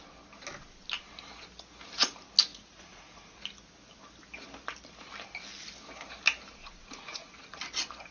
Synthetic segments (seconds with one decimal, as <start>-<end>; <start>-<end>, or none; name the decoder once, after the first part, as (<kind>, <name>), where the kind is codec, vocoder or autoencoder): 2.5-3.4 (vocoder, Vocos); 6.6-7.6